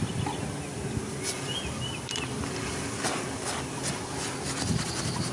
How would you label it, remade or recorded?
recorded